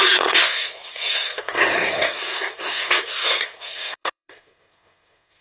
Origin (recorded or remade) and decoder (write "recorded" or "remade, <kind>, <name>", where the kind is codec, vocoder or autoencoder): remade, codec, SNAC